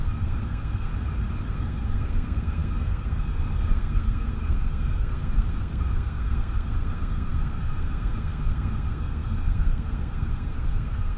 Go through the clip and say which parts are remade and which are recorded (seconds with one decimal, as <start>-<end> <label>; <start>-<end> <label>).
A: 0.0-0.9 remade; 0.9-1.5 recorded; 1.5-11.2 remade